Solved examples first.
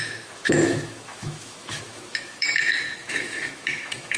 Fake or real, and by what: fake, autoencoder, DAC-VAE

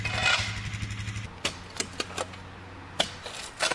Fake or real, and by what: real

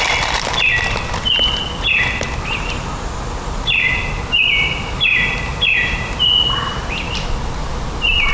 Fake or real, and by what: real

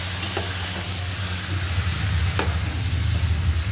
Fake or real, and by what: real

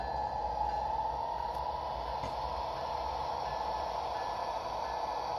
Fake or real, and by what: real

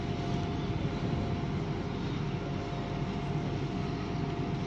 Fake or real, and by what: real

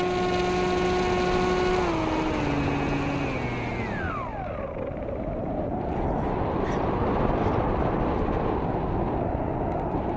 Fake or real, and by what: real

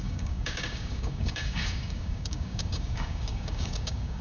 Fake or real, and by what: fake, codec, DAC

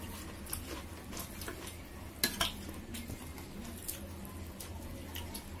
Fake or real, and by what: real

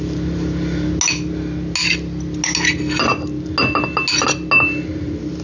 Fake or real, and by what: real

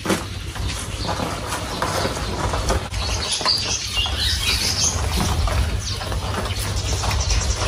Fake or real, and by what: real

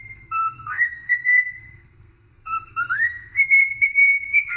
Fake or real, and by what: fake, codec, SNAC